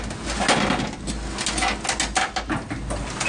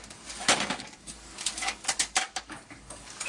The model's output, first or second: second